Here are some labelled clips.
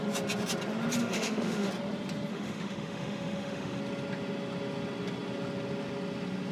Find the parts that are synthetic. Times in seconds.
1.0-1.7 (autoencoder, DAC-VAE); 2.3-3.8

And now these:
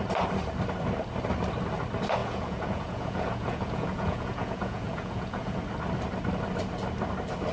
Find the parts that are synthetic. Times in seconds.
2.2-5.6 (vocoder, Vocos)